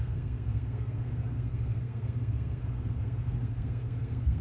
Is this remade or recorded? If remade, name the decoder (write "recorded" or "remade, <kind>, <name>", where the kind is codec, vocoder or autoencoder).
remade, codec, SNAC